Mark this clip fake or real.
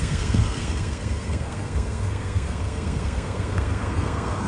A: fake